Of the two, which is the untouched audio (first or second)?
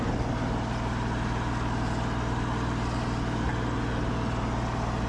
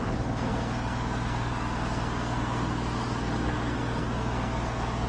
first